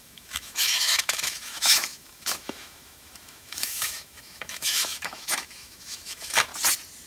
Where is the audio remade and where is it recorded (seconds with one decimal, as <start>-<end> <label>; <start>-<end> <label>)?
0.0-6.5 remade; 6.5-7.1 recorded